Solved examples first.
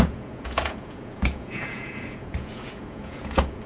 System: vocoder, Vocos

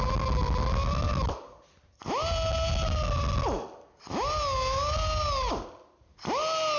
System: none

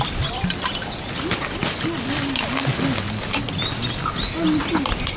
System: none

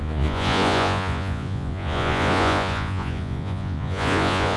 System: vocoder, Vocos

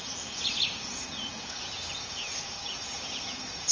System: vocoder, Vocos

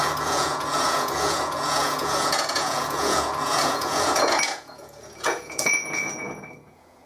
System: vocoder, Vocos